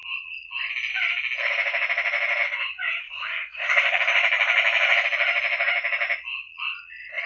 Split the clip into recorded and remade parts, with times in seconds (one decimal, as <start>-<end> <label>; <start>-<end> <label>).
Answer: 0.0-3.0 recorded; 3.0-4.0 remade; 4.0-7.3 recorded